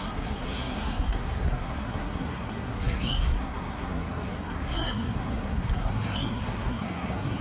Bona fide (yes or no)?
no